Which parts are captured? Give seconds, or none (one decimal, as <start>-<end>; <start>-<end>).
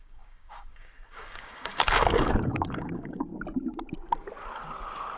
3.3-5.2